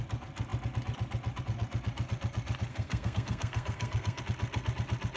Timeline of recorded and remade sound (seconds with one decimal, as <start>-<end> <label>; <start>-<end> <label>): 0.0-2.7 recorded; 2.7-4.2 remade; 4.2-5.2 recorded